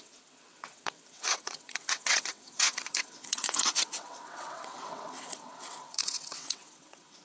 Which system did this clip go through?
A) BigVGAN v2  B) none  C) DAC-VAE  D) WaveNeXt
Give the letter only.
D